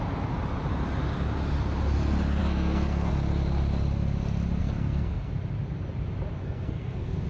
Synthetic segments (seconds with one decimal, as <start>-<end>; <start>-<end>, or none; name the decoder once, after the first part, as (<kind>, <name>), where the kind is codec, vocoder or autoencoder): 2.4-3.1 (codec, SNAC); 4.6-5.3; 6.4-7.3